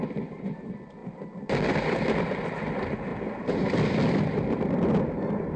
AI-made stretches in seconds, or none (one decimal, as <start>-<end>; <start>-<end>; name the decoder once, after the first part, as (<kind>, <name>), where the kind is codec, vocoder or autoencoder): 0.0-1.0 (vocoder, BigVGAN v2); 2.7-3.1; 4.4-5.6